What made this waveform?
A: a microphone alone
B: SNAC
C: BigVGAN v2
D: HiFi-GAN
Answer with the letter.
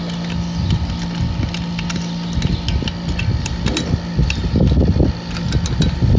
A